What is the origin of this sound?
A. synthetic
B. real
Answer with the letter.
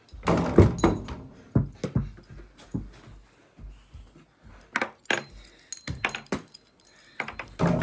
B